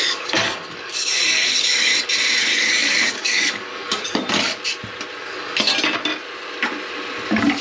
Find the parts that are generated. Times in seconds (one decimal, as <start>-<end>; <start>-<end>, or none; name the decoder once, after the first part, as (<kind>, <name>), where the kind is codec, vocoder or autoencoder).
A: 0.0-1.9 (codec, DAC); 2.4-4.2; 5.2-5.7